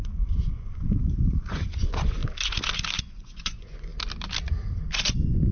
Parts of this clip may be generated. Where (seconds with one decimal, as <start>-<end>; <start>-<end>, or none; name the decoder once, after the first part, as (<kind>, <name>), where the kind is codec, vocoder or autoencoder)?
0.0-2.2 (vocoder, Vocos); 3.0-3.9; 4.9-5.5